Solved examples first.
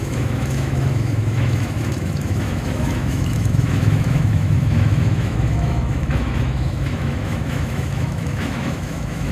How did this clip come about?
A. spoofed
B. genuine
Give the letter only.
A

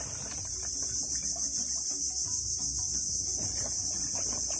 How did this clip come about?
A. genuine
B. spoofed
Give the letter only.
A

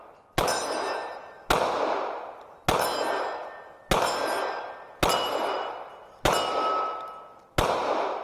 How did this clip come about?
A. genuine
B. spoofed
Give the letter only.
A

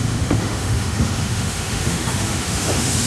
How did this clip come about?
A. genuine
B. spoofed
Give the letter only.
B